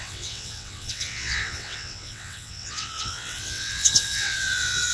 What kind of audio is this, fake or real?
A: fake